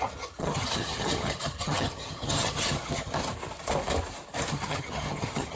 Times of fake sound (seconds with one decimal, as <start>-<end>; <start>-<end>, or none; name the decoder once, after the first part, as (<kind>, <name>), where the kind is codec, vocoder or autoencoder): 0.0-3.2 (vocoder, HiFi-GAN); 4.5-5.6